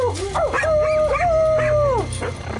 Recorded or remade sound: recorded